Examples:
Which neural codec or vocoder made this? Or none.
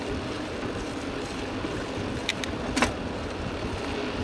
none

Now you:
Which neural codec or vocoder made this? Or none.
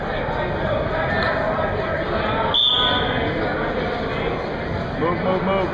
none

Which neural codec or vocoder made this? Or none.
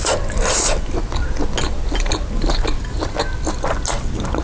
none